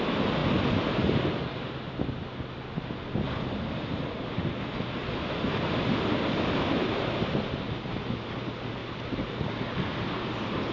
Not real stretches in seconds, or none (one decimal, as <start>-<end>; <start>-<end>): none